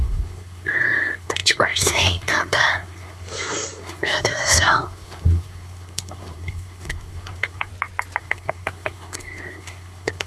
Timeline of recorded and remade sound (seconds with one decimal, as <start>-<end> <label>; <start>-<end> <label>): 0.0-7.7 remade; 7.7-8.2 recorded; 8.2-10.3 remade